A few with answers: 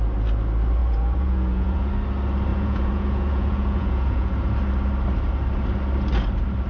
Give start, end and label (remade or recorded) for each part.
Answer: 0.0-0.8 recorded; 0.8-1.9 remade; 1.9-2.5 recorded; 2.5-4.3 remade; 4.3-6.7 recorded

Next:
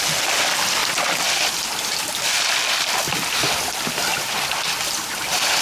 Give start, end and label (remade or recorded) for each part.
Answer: 0.0-4.1 recorded; 4.1-5.6 remade

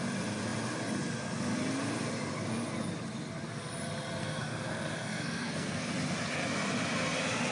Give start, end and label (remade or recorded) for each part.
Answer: 0.0-4.2 recorded; 4.2-5.9 remade; 5.9-7.5 recorded

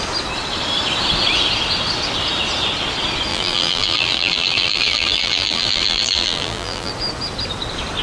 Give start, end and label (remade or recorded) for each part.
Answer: 0.0-3.3 recorded; 3.3-6.9 remade; 6.9-8.0 recorded

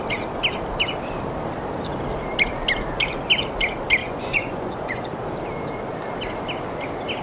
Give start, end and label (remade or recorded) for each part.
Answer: 0.0-4.0 recorded; 4.0-5.0 remade; 5.0-7.2 recorded

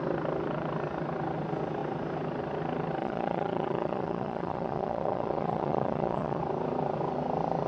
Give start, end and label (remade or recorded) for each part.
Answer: 0.0-3.0 recorded; 3.0-6.4 remade; 6.4-7.7 recorded

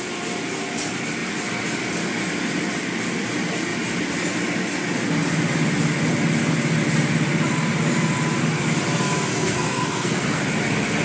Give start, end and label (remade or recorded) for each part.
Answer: 0.0-9.3 recorded; 9.3-10.4 remade; 10.4-11.0 recorded

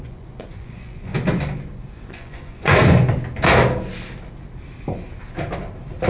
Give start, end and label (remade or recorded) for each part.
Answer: 0.0-1.1 remade; 1.1-2.1 recorded; 2.1-2.8 remade; 2.8-6.1 recorded